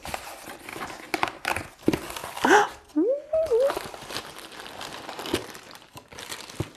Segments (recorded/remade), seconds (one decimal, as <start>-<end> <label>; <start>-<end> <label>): 0.0-0.7 remade; 0.7-3.7 recorded; 3.7-6.8 remade